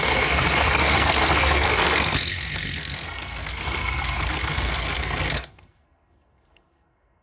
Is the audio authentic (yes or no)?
no